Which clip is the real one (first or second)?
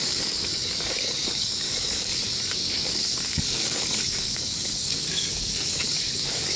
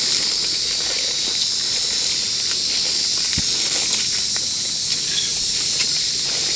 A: second